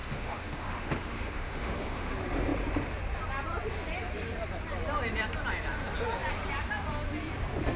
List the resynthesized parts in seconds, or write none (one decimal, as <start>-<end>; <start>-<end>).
0.0-2.1